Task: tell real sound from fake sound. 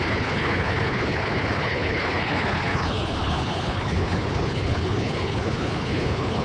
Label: fake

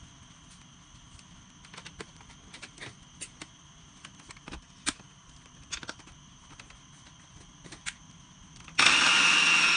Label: real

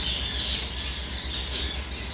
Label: real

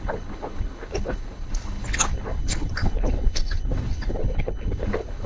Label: fake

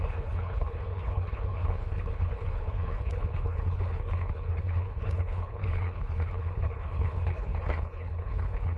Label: fake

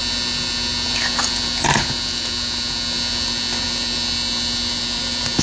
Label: real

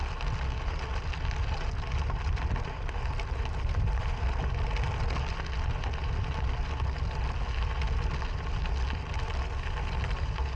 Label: real